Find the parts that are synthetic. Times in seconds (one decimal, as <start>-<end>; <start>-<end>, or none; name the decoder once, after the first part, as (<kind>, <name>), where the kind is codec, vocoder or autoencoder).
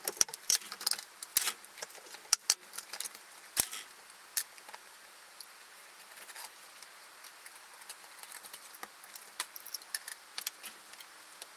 none